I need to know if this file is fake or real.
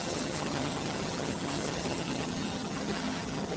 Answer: fake